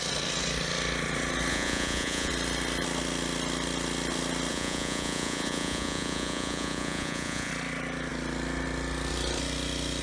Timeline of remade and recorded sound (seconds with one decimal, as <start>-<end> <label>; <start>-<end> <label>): 0.0-1.5 recorded; 1.5-2.3 remade; 2.3-4.5 recorded; 4.5-7.5 remade; 7.5-10.0 recorded